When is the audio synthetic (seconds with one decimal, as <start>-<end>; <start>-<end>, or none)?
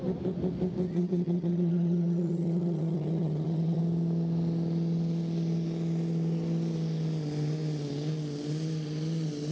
0.9-3.8